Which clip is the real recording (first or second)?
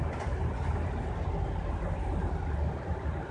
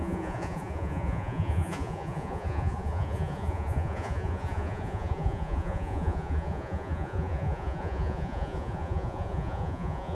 first